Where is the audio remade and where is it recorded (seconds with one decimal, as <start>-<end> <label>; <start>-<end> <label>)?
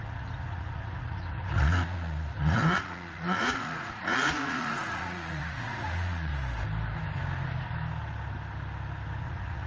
0.0-6.3 remade; 6.3-9.2 recorded; 9.2-9.7 remade